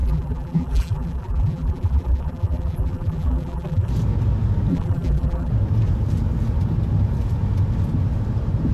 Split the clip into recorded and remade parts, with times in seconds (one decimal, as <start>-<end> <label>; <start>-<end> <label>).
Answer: 0.0-3.9 remade; 3.9-4.7 recorded; 4.7-5.5 remade; 5.5-8.7 recorded

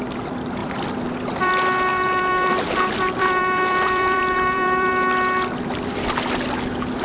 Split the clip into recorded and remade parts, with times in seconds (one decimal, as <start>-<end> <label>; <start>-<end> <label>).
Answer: 0.0-0.6 recorded; 0.6-1.5 remade; 1.5-1.9 recorded; 1.9-4.9 remade; 4.9-7.0 recorded

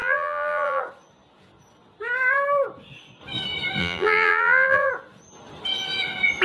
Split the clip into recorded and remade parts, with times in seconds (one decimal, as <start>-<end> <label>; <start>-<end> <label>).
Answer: 0.0-0.8 remade; 0.8-3.8 recorded; 3.8-4.9 remade; 4.9-6.4 recorded

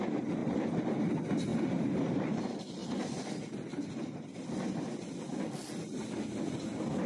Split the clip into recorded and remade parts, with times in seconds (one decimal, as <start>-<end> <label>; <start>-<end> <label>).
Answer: 0.0-0.4 recorded; 0.4-1.1 remade; 1.1-1.5 recorded; 1.5-2.4 remade; 2.4-7.1 recorded